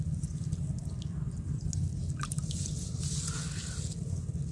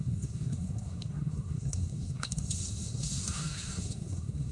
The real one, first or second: first